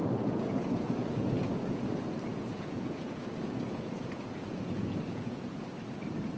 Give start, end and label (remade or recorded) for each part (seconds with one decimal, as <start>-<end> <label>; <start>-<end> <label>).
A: 0.0-1.9 remade; 1.9-2.3 recorded; 2.3-5.7 remade; 5.7-6.4 recorded